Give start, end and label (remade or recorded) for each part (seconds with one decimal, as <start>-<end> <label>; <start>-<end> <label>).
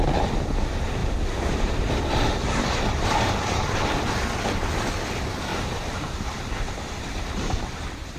0.0-5.5 recorded; 5.5-8.2 remade